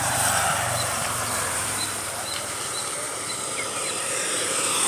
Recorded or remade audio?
remade